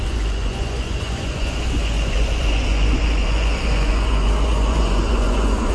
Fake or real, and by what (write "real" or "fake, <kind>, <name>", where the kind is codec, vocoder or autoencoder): fake, vocoder, Vocos